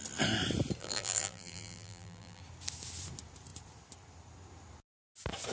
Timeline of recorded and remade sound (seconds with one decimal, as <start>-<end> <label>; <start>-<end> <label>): 0.0-0.8 recorded; 0.8-2.4 remade; 2.4-5.5 recorded